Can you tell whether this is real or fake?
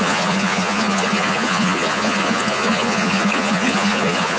fake